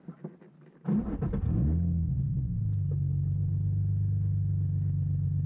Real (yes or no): yes